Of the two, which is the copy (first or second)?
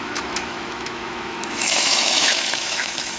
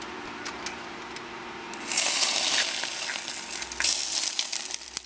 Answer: first